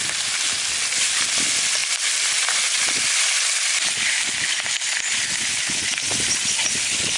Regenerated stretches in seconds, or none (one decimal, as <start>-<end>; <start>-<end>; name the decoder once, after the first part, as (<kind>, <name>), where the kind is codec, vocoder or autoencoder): none